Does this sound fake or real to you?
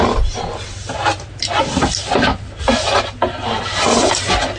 real